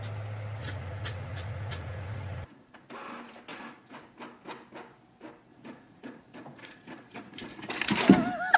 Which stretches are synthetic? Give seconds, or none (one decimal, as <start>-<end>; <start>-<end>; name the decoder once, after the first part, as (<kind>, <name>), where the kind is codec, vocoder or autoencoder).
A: 0.6-2.8 (vocoder, Vocos); 3.5-4.0; 5.5-7.7